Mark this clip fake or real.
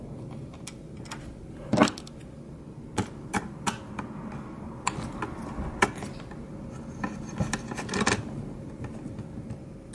real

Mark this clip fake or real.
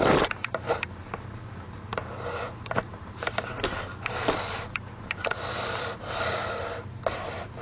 fake